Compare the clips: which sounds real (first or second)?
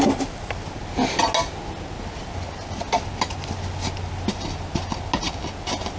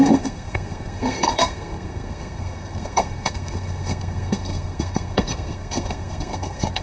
first